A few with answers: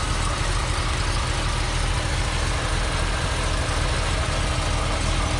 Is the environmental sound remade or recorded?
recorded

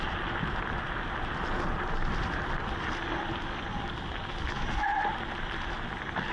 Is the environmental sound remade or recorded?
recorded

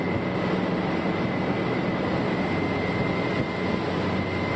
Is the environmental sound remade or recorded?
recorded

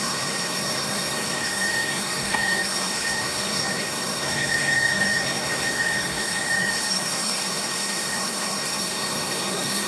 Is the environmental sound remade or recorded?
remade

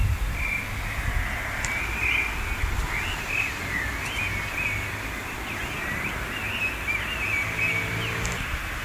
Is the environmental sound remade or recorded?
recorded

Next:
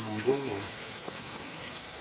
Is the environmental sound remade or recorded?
remade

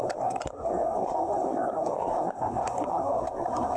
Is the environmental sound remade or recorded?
remade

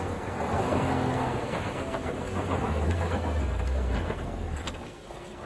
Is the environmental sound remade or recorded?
remade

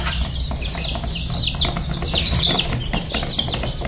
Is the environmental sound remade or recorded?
recorded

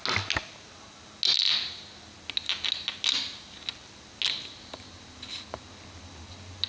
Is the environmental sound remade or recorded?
recorded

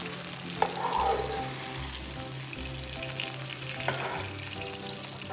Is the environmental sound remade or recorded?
recorded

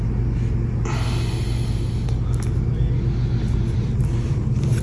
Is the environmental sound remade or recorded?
recorded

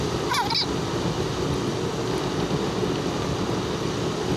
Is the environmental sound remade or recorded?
recorded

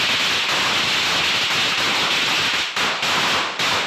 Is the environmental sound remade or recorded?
recorded